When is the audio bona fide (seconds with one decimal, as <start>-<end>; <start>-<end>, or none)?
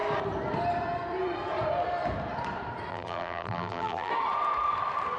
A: 0.0-2.9; 4.1-5.2